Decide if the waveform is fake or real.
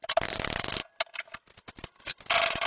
real